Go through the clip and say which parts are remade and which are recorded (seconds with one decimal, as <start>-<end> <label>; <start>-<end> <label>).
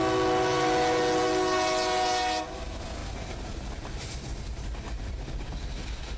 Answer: 0.0-6.2 recorded